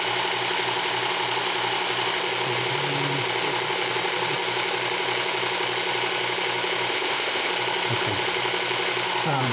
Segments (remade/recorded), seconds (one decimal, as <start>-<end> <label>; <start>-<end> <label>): 0.0-6.9 recorded; 6.9-7.5 remade; 7.5-9.5 recorded

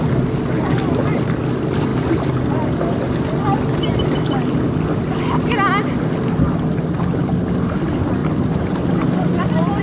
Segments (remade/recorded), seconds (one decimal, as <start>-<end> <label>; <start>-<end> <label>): 0.0-9.8 recorded

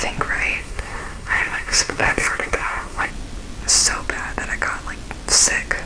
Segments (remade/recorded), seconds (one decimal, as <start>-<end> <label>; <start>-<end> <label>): 0.0-0.6 recorded; 0.6-3.1 remade; 3.1-5.9 recorded

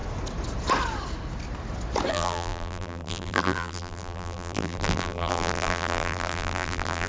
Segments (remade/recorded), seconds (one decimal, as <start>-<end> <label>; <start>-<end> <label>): 0.0-2.1 recorded; 2.1-7.1 remade

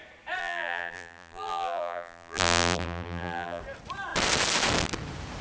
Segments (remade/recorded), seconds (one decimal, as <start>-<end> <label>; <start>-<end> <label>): 0.0-0.4 recorded; 0.4-3.6 remade; 3.6-5.4 recorded

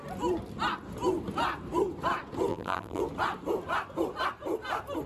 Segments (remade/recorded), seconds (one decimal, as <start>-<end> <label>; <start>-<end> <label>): 0.0-2.5 recorded; 2.5-3.0 remade; 3.0-5.1 recorded

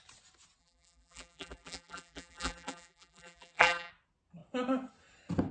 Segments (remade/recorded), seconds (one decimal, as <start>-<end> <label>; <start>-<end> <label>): 0.0-0.6 recorded; 0.6-3.9 remade; 3.9-5.5 recorded

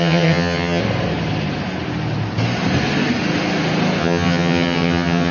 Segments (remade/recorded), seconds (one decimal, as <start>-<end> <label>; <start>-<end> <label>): 0.0-0.8 remade; 0.8-4.0 recorded; 4.0-5.3 remade